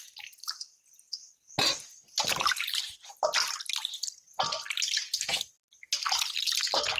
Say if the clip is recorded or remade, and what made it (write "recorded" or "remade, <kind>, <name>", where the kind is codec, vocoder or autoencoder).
recorded